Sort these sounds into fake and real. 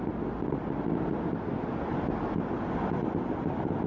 real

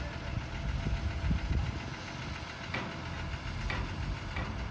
real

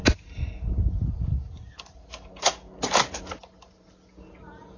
real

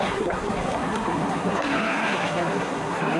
fake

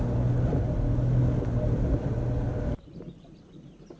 real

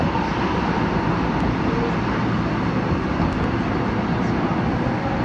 real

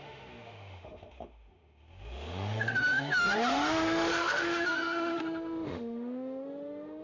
fake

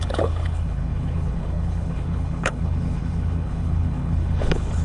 fake